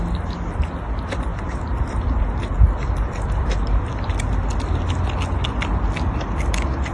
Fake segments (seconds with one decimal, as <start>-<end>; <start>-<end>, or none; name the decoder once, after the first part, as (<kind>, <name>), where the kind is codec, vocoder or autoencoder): 1.3-4.7 (vocoder, BigVGAN v2)